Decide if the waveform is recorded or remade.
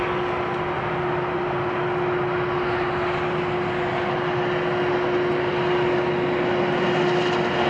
recorded